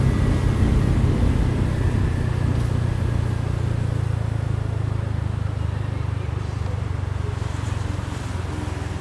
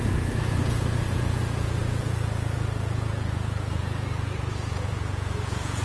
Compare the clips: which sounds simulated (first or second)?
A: second